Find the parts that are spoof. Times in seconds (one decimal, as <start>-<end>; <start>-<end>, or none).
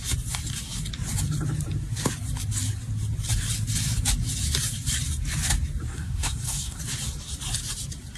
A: 5.9-6.8